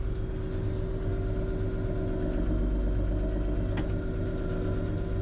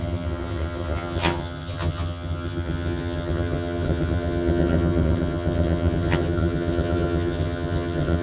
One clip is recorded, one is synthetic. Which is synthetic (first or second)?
second